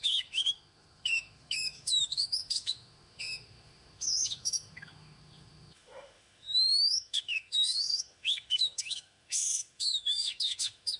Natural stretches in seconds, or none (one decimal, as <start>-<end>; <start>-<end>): none